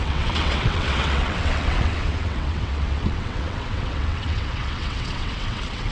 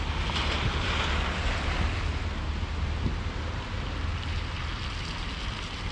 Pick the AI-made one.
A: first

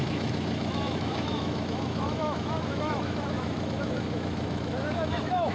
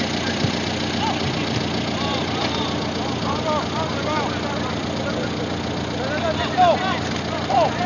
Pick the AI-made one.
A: first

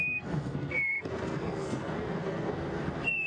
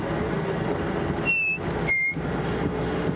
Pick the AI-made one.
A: first